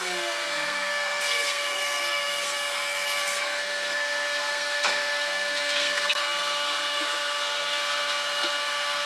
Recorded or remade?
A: remade